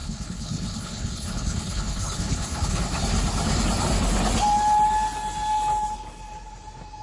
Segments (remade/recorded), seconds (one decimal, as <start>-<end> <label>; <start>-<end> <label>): 0.0-2.8 remade; 2.8-7.0 recorded